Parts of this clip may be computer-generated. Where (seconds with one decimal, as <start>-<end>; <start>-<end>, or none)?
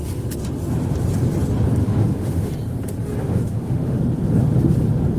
1.8-2.5; 3.2-4.0